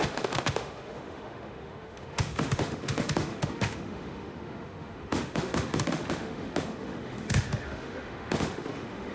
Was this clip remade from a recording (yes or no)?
yes